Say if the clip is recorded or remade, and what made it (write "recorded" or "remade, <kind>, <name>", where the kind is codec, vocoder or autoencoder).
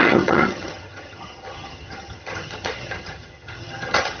remade, vocoder, HiFi-GAN